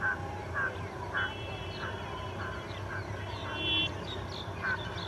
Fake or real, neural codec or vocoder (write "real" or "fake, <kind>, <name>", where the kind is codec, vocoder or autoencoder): real